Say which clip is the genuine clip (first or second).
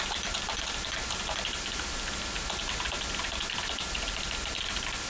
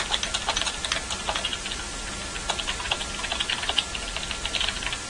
second